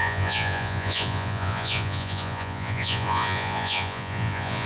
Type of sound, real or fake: fake